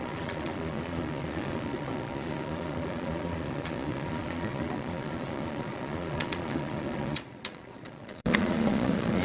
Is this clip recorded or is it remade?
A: remade